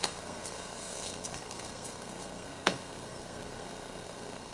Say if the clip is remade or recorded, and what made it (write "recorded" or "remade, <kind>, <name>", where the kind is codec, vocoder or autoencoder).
remade, codec, SNAC